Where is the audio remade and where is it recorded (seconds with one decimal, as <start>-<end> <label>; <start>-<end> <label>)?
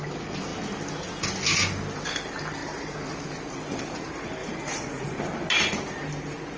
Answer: 0.0-4.4 recorded; 4.4-5.2 remade; 5.2-6.6 recorded